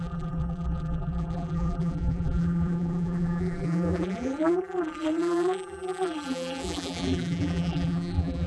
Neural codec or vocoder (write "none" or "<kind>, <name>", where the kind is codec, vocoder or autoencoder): vocoder, BigVGAN v2